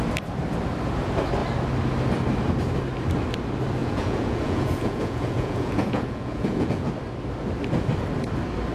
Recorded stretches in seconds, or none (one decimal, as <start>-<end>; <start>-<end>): 0.0-3.8; 6.9-8.7